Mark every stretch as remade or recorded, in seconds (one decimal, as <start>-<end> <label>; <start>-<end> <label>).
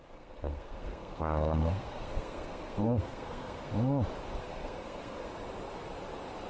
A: 0.0-3.7 remade; 3.7-4.4 recorded; 4.4-5.3 remade; 5.3-6.5 recorded